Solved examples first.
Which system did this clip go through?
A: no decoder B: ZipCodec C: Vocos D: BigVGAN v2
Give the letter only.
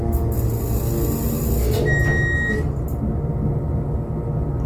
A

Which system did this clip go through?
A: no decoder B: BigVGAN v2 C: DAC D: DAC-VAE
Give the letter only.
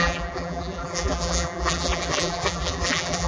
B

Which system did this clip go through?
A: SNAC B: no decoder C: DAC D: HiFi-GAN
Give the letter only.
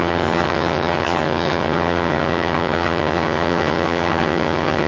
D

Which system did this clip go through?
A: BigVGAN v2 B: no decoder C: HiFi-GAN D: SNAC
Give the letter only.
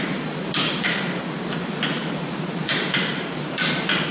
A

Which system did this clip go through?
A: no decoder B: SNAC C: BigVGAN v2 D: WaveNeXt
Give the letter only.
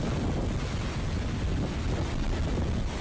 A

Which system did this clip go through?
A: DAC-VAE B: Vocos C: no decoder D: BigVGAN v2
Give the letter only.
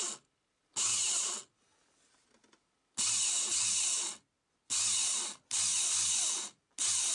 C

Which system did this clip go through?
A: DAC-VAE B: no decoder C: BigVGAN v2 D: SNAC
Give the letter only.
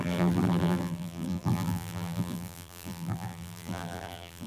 C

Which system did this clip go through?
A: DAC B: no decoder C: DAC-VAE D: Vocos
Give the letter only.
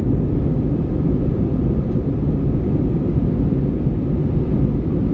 B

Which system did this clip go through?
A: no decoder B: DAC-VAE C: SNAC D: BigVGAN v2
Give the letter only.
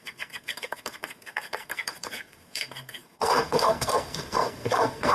C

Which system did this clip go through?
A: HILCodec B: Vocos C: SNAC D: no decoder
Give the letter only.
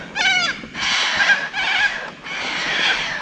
D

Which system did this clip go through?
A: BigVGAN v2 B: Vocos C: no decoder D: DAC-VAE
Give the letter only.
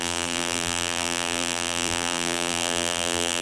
A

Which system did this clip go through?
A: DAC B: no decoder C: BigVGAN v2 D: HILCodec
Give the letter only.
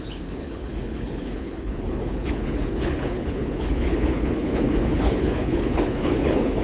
D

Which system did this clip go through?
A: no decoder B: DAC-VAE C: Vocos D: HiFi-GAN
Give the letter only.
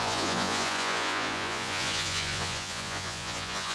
C